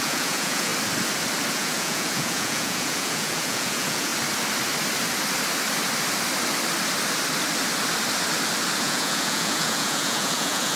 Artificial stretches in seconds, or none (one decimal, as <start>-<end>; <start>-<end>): 0.0-0.7; 1.5-4.1; 8.8-10.8